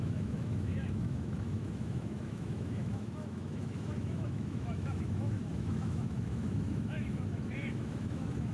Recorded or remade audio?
remade